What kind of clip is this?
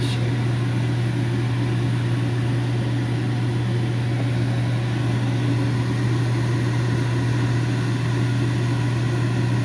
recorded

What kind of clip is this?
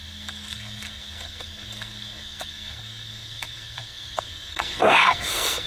remade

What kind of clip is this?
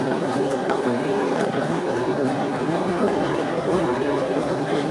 remade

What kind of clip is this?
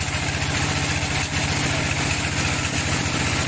recorded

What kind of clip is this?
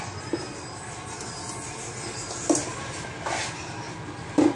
recorded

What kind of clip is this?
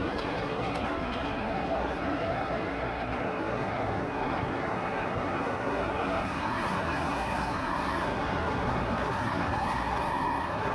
remade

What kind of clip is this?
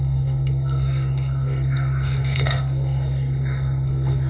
remade